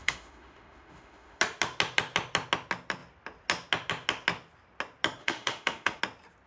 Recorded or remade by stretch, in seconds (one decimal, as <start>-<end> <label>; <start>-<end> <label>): 0.0-1.4 remade; 1.4-5.2 recorded; 5.2-6.0 remade; 6.0-6.5 recorded